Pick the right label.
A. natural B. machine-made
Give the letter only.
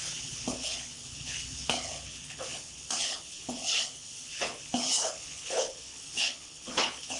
B